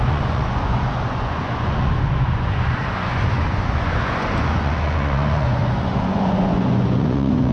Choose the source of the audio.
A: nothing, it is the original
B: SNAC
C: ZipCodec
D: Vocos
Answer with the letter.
D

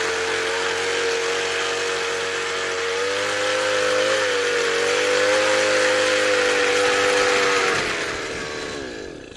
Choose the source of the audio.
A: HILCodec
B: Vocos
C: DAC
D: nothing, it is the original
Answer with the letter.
D